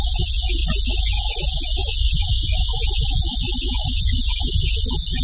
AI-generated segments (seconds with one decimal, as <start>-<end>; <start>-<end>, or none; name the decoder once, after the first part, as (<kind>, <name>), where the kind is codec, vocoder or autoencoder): none